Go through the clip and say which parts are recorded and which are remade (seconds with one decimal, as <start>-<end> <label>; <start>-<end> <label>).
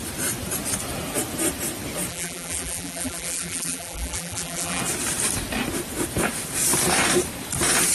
0.0-2.1 recorded; 2.1-4.8 remade; 4.8-7.9 recorded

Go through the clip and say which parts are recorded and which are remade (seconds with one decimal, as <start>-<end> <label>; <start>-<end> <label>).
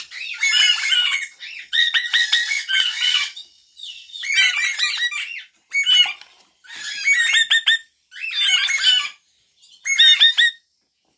0.0-1.0 recorded; 1.0-4.3 remade; 4.3-11.2 recorded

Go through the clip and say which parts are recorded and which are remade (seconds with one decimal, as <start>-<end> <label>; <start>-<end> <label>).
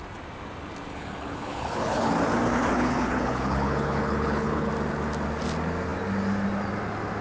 0.0-0.9 recorded; 0.9-2.1 remade; 2.1-2.6 recorded; 2.6-4.7 remade; 4.7-7.2 recorded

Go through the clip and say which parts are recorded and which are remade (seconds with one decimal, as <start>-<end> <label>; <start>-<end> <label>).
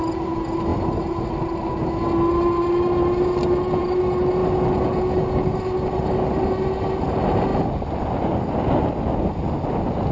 0.0-10.1 recorded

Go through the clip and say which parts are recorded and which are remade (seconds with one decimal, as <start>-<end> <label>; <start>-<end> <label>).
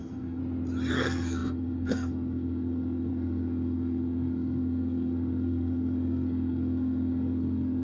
0.0-0.4 remade; 0.4-0.9 recorded; 0.9-7.8 remade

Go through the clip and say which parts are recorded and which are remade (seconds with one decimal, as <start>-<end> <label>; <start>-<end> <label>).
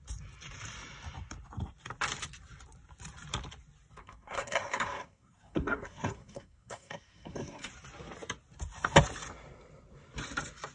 0.0-4.0 recorded; 4.0-7.7 remade; 7.7-10.7 recorded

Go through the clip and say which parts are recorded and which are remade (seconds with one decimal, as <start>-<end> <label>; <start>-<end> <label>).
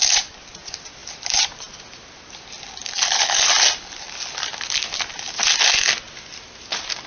0.0-7.1 recorded